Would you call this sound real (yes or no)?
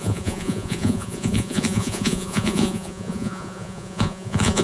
no